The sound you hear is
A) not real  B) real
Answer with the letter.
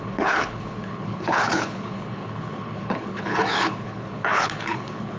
A